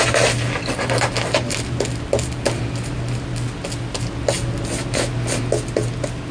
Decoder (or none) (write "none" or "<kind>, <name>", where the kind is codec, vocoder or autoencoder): none